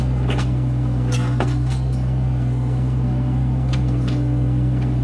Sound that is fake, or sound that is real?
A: fake